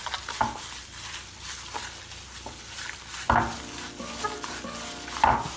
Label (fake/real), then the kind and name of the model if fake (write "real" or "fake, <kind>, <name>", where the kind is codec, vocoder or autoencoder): real